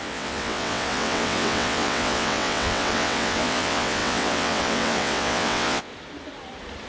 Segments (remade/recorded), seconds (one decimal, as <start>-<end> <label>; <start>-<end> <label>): 0.0-5.9 remade; 5.9-6.9 recorded